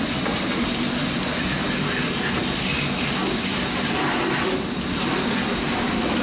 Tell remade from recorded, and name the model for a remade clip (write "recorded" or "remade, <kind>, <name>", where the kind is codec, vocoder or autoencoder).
recorded